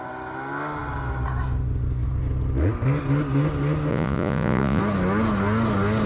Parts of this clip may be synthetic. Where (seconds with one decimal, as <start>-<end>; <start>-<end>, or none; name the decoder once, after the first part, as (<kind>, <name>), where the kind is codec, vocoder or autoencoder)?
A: 3.9-4.8 (vocoder, Vocos)